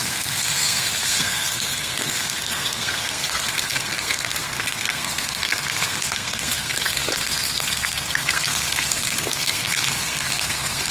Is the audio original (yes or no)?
no